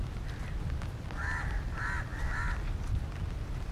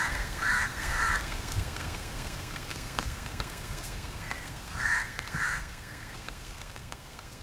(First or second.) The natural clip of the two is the first